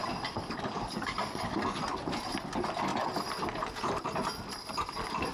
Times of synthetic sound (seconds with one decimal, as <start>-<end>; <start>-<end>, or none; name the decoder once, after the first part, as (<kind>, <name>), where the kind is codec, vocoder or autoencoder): 0.4-1.8 (codec, DAC)